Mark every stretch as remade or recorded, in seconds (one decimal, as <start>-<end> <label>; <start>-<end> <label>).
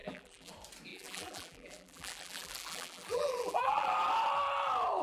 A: 0.0-0.5 remade; 0.5-0.9 recorded; 0.9-3.9 remade; 3.9-5.0 recorded